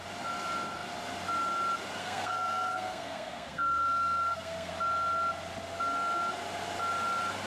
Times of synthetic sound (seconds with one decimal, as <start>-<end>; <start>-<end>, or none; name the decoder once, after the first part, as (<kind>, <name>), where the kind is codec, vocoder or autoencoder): 2.0-4.7 (codec, SNAC)